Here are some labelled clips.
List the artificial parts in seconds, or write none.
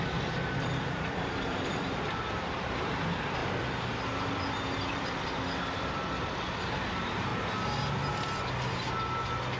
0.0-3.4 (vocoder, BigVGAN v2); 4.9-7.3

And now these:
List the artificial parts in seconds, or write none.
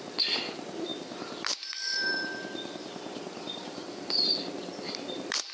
0.0-5.5 (vocoder, BigVGAN v2)